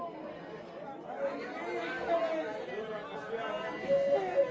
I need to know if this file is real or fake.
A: real